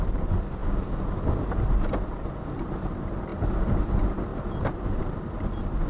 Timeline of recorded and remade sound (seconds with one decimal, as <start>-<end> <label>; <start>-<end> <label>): 0.0-5.9 recorded